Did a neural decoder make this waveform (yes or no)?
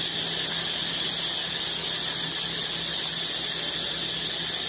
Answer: no